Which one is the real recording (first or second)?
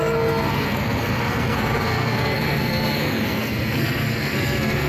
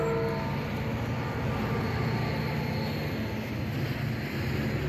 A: second